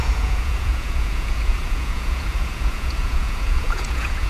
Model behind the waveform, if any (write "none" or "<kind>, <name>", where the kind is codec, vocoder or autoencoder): vocoder, Vocos